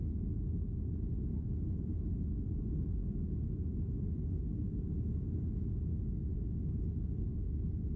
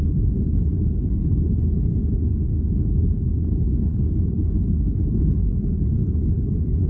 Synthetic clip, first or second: second